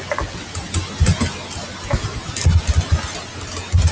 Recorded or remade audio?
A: recorded